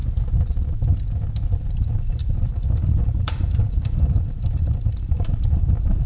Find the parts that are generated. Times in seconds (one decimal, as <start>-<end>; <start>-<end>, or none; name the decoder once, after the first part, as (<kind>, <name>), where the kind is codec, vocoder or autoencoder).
1.7-6.1 (vocoder, BigVGAN v2)